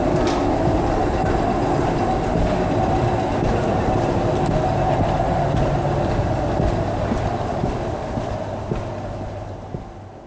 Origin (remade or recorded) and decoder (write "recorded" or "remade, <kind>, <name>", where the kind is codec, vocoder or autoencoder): recorded